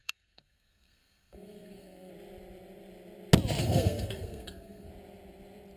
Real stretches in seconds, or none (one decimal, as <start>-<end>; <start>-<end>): 2.1-3.6; 4.9-5.8